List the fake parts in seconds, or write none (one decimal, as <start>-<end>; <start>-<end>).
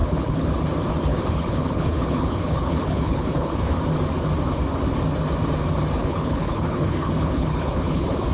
0.0-0.5; 1.1-3.8; 6.0-8.3